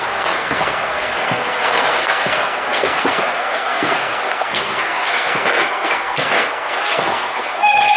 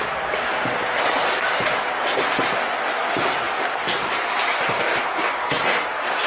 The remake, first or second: first